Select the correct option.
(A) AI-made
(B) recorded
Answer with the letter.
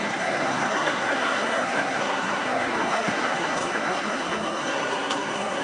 A